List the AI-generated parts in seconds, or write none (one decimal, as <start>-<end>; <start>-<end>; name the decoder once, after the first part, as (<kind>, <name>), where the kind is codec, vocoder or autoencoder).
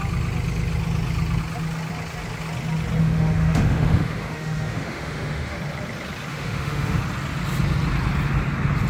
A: 3.0-5.6 (autoencoder, DAC-VAE); 6.3-7.0